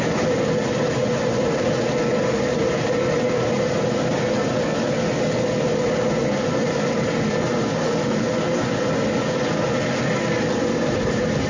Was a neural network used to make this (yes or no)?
no